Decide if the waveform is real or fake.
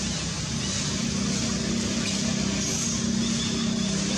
real